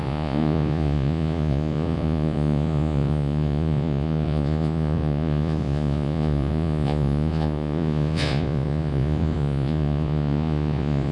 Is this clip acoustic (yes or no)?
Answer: no